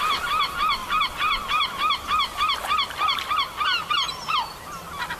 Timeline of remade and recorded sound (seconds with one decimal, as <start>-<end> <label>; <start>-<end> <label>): 0.0-5.2 recorded